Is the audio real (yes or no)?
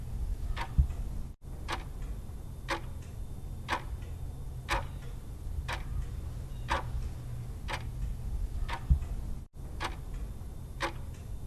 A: yes